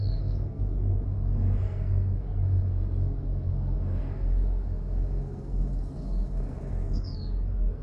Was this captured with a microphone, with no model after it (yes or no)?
no